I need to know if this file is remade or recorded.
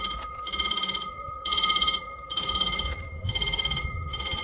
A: remade